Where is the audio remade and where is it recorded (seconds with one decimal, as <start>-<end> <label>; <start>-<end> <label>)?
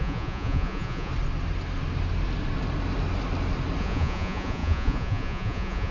0.0-1.1 remade; 1.1-3.8 recorded; 3.8-5.9 remade